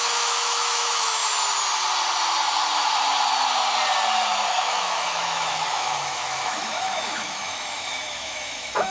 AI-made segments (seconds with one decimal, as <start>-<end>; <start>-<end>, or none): 0.0-1.2; 4.3-8.9